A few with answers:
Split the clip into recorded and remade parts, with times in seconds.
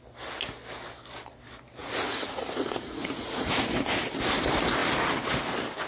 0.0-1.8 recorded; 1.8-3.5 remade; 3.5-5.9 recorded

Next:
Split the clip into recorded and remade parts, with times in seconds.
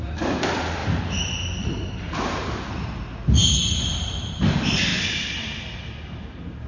0.0-6.7 recorded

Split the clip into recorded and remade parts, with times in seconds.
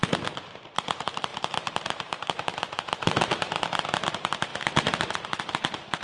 0.0-4.5 remade; 4.5-5.4 recorded; 5.4-6.0 remade